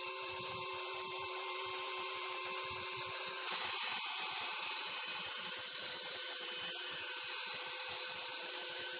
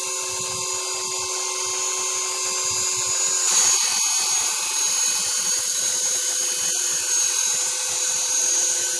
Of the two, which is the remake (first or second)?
first